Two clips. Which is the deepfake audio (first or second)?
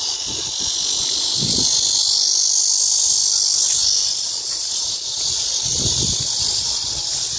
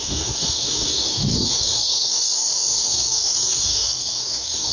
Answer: second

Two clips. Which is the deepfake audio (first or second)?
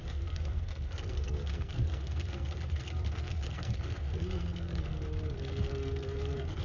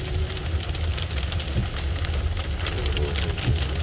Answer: first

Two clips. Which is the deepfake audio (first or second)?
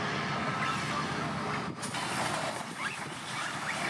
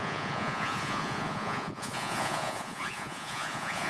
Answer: second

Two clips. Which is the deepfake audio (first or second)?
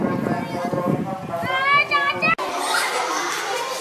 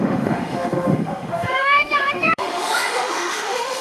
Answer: second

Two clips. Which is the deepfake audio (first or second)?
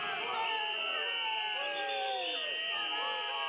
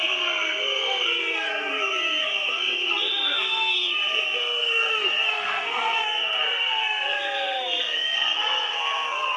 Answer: second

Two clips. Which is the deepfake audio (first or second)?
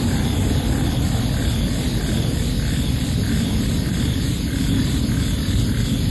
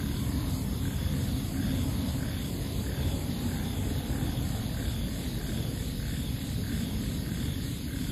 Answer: second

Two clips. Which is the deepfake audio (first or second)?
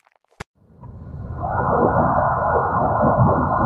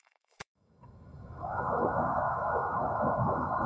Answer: second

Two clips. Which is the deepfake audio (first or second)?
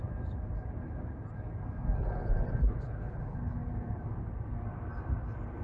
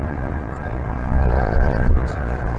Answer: second